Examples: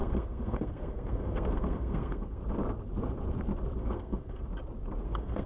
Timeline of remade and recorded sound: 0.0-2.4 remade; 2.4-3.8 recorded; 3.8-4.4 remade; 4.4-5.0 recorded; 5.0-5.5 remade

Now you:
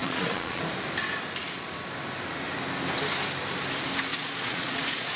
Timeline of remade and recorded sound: 0.0-0.6 remade; 0.6-4.1 recorded; 4.1-5.2 remade

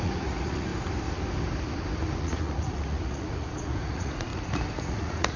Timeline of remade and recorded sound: 0.0-0.7 remade; 0.7-2.2 recorded; 2.2-4.3 remade; 4.3-4.8 recorded; 4.8-5.4 remade

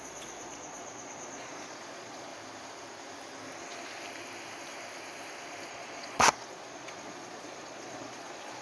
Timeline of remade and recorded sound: 0.0-2.3 remade; 2.3-5.7 recorded; 5.7-8.6 remade

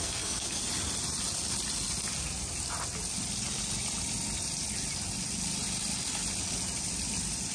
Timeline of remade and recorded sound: 0.0-0.6 remade; 0.6-7.5 recorded

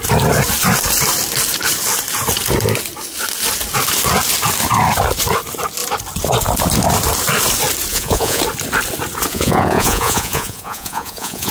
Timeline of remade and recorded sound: 0.0-7.9 recorded; 7.9-8.4 remade; 8.4-9.3 recorded; 9.3-11.5 remade

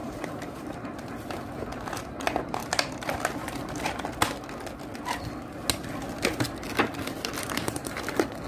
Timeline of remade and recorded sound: 0.0-1.0 remade; 1.0-7.3 recorded; 7.3-8.0 remade; 8.0-8.5 recorded